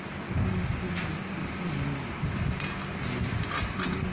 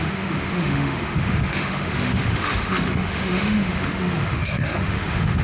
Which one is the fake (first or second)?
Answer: second